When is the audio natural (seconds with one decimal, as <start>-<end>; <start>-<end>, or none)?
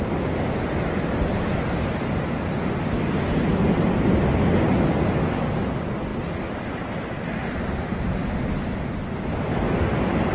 0.0-10.3